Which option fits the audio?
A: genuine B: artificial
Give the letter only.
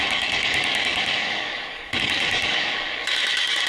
B